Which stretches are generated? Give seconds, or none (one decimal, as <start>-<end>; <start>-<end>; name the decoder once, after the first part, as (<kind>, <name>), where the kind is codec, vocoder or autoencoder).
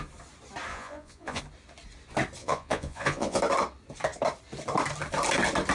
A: 0.7-1.4 (vocoder, Vocos); 2.4-3.4